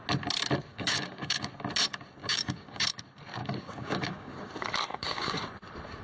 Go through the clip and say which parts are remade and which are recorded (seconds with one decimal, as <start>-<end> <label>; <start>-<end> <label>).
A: 0.0-0.7 recorded; 0.7-1.5 remade; 1.5-2.2 recorded; 2.2-3.0 remade; 3.0-3.4 recorded; 3.4-4.5 remade; 4.5-4.9 recorded; 4.9-5.4 remade; 5.4-6.0 recorded